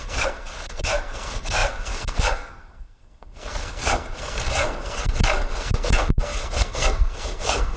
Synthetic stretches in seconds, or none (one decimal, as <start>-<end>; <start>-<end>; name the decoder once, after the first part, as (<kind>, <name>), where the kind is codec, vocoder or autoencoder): 0.0-7.8 (codec, SNAC)